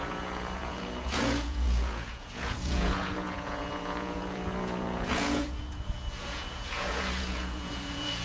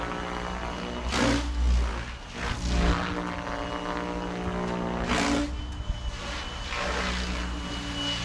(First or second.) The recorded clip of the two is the second